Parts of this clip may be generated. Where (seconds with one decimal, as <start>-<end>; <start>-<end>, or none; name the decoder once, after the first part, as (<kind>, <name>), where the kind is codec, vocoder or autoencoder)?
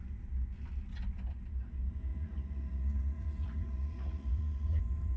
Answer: 2.1-4.8 (vocoder, Vocos)